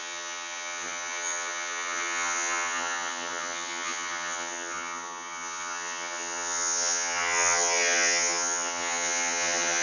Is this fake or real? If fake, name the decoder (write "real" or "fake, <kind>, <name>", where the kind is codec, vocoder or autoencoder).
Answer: fake, vocoder, HiFi-GAN